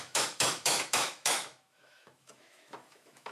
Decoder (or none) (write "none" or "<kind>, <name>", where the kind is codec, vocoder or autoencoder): autoencoder, DAC-VAE